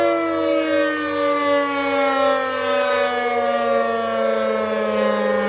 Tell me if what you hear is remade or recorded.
recorded